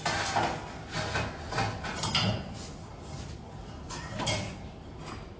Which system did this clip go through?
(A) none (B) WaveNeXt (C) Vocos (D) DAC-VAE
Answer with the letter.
A